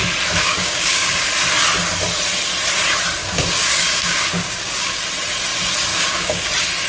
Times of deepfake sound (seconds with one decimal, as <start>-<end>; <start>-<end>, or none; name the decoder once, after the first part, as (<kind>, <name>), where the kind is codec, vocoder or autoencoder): 0.4-1.3 (codec, DAC); 3.2-5.0; 5.9-6.5